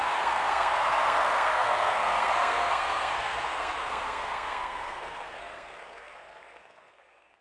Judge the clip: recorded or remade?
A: remade